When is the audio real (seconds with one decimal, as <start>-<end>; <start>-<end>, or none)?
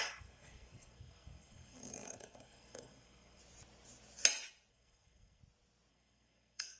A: 3.4-4.7; 5.4-5.9